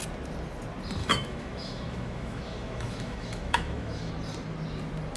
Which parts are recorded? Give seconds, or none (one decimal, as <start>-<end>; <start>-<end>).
0.0-1.0; 4.1-5.2